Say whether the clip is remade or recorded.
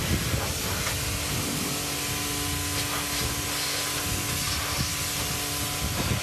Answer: recorded